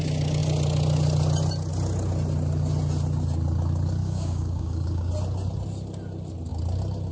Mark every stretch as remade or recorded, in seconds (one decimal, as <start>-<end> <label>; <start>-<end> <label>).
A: 0.0-4.0 recorded; 4.0-5.1 remade; 5.1-7.1 recorded